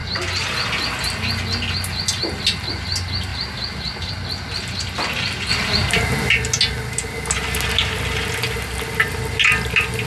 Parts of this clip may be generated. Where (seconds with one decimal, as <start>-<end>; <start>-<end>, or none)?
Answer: 3.3-4.1; 5.5-6.3